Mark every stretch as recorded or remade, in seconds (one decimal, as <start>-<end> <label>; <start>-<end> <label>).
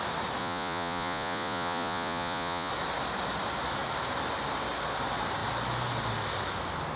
0.0-0.4 recorded; 0.4-2.7 remade; 2.7-7.0 recorded